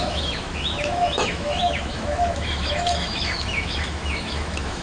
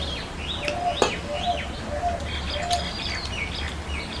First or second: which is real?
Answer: second